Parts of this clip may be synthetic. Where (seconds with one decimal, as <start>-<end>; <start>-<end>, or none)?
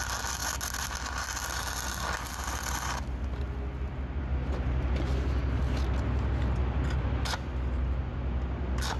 none